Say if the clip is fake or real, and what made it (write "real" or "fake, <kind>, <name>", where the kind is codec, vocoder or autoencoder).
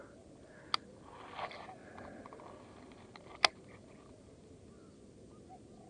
real